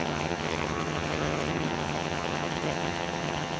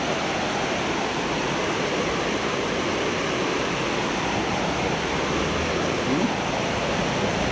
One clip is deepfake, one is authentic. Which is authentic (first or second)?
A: second